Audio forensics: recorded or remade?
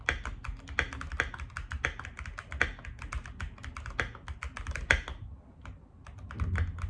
recorded